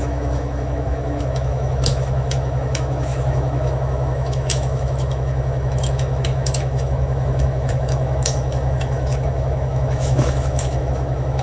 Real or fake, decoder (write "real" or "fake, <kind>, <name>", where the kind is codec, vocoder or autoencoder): fake, autoencoder, DAC-VAE